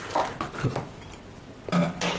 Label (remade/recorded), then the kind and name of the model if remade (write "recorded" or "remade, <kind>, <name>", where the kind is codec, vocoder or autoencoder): recorded